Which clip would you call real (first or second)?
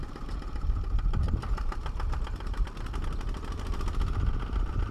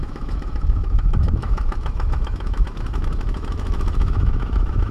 first